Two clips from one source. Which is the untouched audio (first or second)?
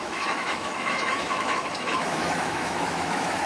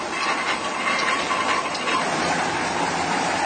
second